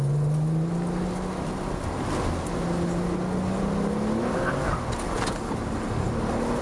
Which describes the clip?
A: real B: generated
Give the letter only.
A